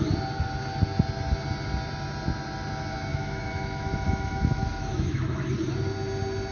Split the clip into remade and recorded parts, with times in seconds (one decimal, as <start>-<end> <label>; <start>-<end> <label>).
0.0-3.1 recorded; 3.1-5.5 remade; 5.5-6.5 recorded